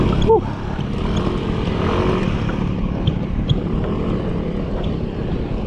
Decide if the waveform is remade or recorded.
remade